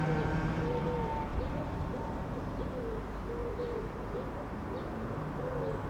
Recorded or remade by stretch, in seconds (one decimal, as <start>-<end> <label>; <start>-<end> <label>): 0.0-1.3 recorded; 1.3-2.8 remade; 2.8-3.4 recorded; 3.4-4.9 remade; 4.9-5.9 recorded